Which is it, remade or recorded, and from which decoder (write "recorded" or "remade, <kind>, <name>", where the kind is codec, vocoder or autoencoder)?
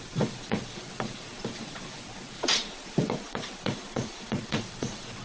remade, vocoder, Vocos